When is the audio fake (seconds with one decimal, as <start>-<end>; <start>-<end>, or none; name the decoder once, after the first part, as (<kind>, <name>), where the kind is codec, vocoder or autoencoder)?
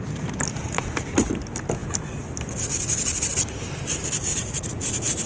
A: 0.6-1.3 (vocoder, Vocos); 4.3-5.3